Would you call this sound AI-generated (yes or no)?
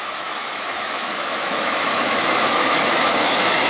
yes